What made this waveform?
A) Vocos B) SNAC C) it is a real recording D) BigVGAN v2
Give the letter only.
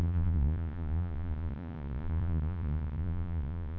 A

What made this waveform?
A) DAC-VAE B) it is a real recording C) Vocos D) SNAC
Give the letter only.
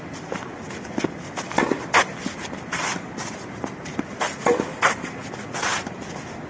B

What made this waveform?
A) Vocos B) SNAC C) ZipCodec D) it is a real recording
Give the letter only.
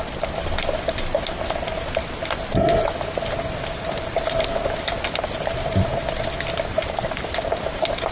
D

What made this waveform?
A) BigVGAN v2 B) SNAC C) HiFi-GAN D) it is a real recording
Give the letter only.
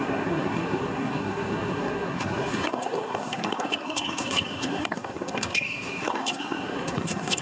B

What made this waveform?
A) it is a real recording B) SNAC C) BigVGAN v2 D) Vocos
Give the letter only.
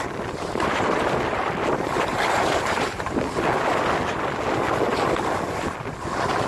A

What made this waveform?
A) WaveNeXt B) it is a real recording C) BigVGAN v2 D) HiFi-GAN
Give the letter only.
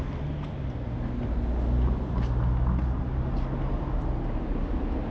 B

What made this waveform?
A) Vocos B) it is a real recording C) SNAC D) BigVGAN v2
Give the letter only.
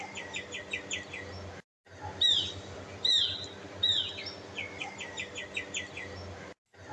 B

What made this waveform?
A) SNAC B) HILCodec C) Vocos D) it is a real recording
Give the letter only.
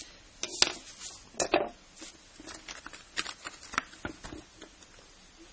D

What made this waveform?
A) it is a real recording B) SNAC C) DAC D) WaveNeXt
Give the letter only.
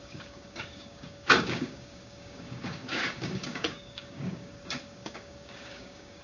C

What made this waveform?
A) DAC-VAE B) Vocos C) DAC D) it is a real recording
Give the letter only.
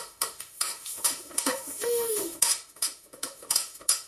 A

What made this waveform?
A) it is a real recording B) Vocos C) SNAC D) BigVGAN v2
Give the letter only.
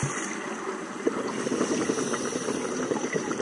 D